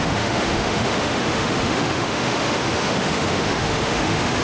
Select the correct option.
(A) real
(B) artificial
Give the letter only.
B